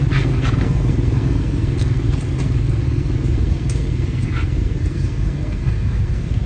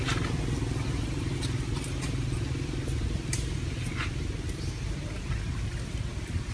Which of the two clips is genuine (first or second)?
second